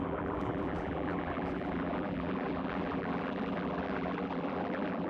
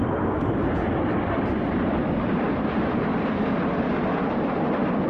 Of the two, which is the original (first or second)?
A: second